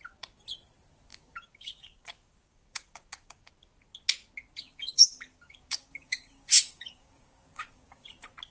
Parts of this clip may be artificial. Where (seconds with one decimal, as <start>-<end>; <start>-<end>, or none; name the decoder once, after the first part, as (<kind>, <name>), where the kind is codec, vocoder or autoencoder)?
1.1-3.5 (codec, DAC); 4.6-8.1

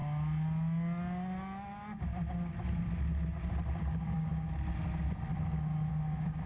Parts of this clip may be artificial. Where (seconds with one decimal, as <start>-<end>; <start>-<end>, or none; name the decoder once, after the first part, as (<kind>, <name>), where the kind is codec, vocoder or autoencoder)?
3.8-4.3 (codec, DAC); 5.9-6.5

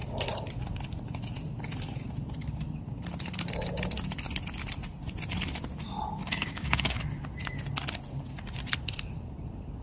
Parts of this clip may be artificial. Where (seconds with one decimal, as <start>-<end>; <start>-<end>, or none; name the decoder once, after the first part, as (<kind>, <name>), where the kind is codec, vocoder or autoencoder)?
6.2-7.0 (codec, DAC)